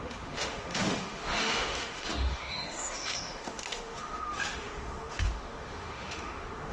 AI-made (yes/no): yes